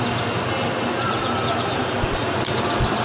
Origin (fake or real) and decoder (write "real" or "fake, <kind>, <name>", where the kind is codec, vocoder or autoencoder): fake, vocoder, BigVGAN v2